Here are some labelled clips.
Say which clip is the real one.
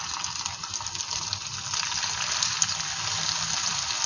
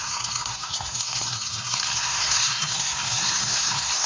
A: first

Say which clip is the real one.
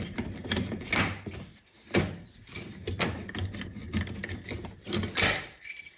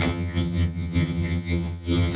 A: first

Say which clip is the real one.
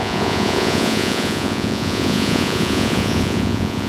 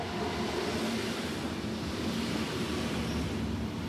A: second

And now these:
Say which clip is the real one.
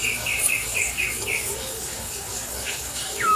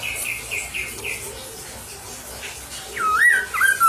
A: second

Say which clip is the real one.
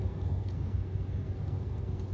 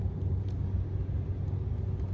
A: second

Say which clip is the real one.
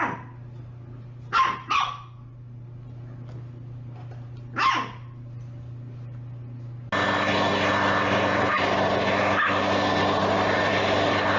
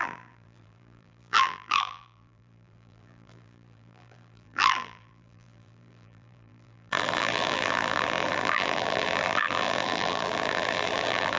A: first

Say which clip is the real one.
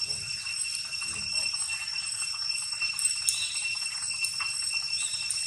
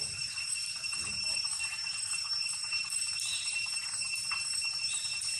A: first